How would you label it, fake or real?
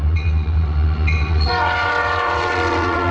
fake